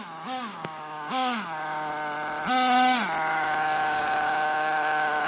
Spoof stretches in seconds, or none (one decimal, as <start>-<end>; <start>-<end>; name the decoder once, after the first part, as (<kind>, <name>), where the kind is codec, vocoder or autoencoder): 0.5-1.9 (codec, DAC); 3.3-5.3